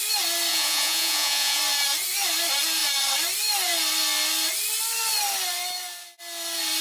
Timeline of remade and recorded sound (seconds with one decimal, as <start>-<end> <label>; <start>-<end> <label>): 0.0-0.5 recorded; 0.5-1.6 remade; 1.6-6.8 recorded